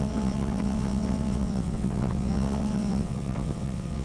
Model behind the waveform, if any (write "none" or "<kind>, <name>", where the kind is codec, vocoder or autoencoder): vocoder, WaveNeXt